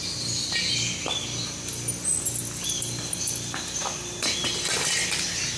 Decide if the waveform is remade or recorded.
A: recorded